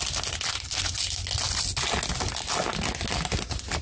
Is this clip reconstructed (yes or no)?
no